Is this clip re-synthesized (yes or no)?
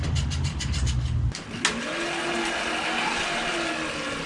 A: no